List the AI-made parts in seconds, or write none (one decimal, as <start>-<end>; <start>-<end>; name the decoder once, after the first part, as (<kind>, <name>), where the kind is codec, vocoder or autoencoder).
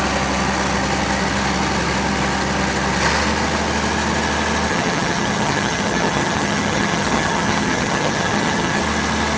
4.7-8.8 (vocoder, HiFi-GAN)